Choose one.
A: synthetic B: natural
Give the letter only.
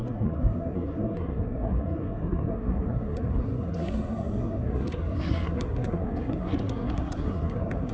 A